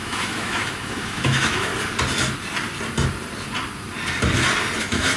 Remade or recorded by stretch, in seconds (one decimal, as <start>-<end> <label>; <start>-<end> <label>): 0.0-1.7 remade; 1.7-4.8 recorded; 4.8-5.2 remade